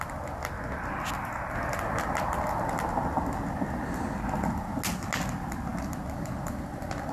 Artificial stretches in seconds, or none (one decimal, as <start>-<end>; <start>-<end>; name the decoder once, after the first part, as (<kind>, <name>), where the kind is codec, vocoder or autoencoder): none

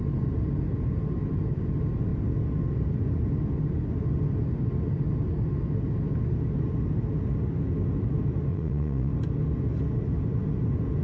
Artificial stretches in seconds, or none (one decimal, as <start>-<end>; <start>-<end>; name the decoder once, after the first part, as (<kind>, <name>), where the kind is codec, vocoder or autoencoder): 8.5-9.1 (vocoder, Vocos)